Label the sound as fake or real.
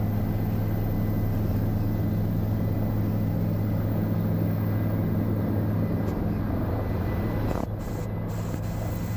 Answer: real